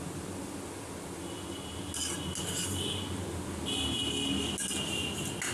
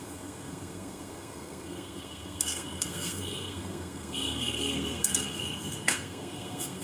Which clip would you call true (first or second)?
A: first